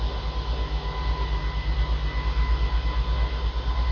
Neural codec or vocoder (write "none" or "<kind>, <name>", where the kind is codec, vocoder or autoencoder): none